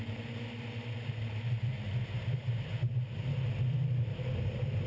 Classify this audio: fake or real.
real